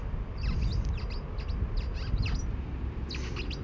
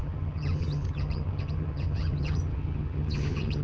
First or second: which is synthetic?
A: second